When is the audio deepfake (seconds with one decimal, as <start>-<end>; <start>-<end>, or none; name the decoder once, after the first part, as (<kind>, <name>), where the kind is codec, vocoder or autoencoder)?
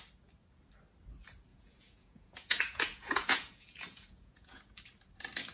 1.5-4.8 (vocoder, Vocos)